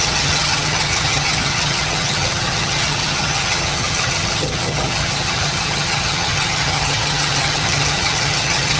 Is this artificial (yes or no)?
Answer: yes